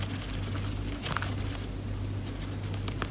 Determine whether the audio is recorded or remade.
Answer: recorded